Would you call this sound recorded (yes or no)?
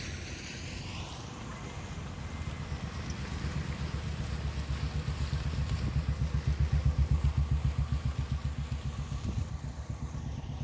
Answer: yes